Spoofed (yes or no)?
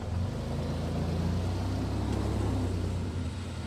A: no